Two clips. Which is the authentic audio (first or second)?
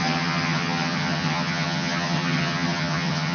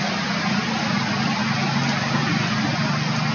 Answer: second